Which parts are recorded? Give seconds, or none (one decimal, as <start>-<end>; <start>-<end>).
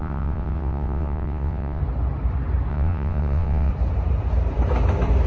1.8-2.7; 3.7-5.3